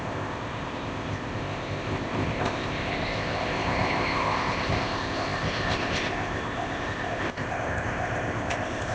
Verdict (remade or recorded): remade